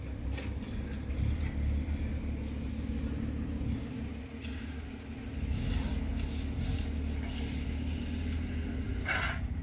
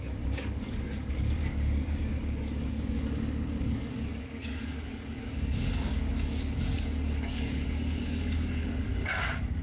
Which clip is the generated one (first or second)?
second